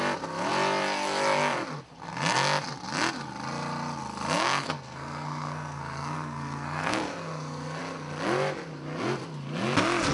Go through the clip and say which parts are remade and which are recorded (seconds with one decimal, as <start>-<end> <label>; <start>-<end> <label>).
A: 0.0-4.6 recorded; 4.6-7.8 remade; 7.8-10.1 recorded